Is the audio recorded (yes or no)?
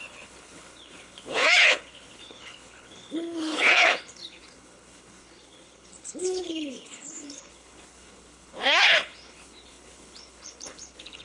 no